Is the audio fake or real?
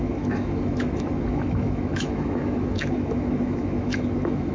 fake